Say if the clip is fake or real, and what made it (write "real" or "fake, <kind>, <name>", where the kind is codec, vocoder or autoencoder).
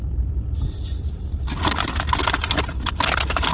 real